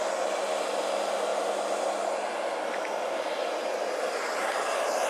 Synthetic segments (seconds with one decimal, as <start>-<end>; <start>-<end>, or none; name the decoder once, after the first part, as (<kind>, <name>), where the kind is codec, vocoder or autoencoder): none